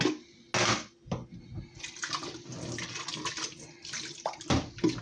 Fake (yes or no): no